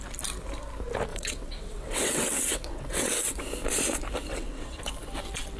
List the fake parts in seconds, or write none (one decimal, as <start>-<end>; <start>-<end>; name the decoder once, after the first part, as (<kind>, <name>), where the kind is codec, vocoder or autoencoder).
1.1-3.4 (vocoder, WaveNeXt); 4.3-4.8